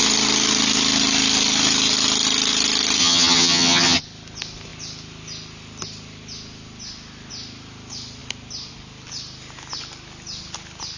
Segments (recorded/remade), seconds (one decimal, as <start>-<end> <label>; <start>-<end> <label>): 0.0-3.0 recorded; 3.0-4.0 remade; 4.0-11.0 recorded